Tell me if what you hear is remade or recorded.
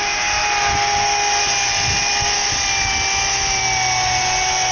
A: recorded